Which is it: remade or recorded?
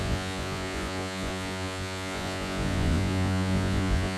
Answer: remade